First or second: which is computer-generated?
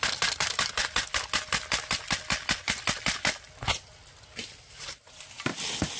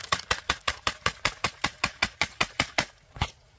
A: second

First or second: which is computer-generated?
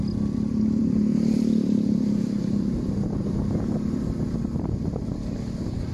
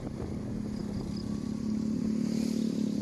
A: first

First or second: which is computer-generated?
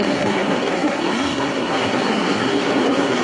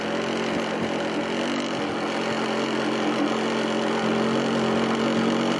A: first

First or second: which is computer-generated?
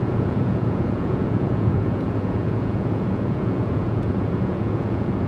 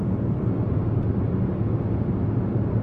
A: first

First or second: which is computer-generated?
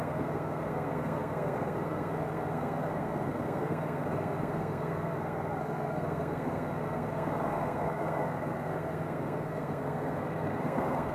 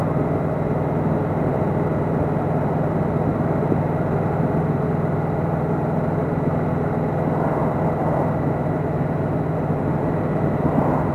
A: first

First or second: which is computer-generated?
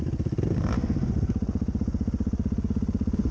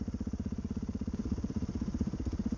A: second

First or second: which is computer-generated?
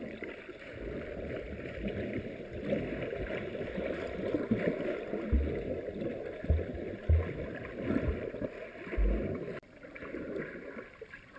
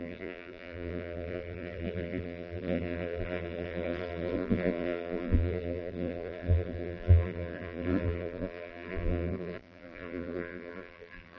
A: second